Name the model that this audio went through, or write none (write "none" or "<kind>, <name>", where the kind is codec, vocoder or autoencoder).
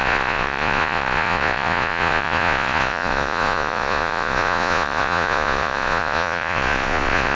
vocoder, Vocos